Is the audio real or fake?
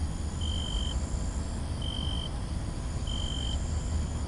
real